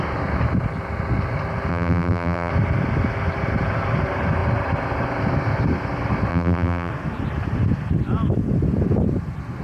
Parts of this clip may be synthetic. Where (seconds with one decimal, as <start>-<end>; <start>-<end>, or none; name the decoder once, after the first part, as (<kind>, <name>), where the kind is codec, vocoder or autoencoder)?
1.7-2.5 (vocoder, BigVGAN v2); 6.3-6.9